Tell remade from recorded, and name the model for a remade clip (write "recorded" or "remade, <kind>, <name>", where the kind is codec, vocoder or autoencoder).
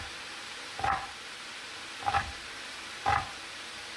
remade, vocoder, BigVGAN v2